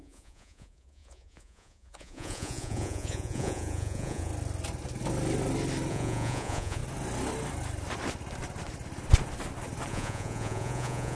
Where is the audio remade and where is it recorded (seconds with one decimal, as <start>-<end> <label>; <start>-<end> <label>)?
0.0-4.3 remade; 4.3-5.9 recorded; 5.9-6.8 remade; 6.8-9.9 recorded; 9.9-11.2 remade